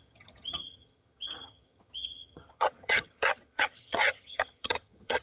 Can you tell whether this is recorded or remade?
remade